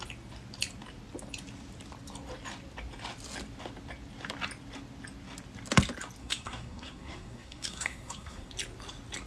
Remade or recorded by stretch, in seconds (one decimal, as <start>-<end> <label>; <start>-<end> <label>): 0.0-6.2 recorded; 6.2-8.5 remade; 8.5-9.3 recorded